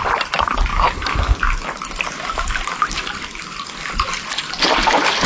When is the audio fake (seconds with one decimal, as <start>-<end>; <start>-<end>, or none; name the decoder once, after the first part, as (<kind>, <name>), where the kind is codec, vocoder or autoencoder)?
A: none